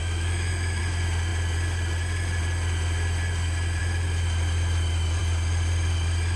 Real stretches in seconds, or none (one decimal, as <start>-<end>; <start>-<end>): 0.8-6.4